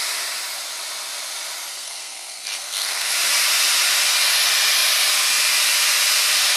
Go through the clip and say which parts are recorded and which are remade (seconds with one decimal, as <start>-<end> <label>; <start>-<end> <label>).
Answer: 0.0-1.7 recorded; 1.7-3.1 remade; 3.1-6.6 recorded